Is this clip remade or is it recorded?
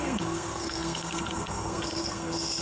remade